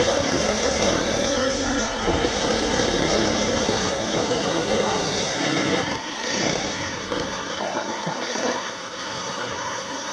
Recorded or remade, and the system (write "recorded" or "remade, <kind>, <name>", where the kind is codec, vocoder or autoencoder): remade, codec, SNAC